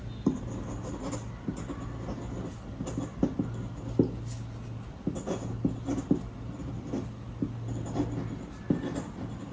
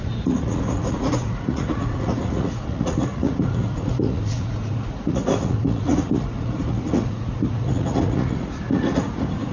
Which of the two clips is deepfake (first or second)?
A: second